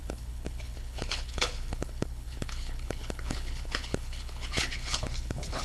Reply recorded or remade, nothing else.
remade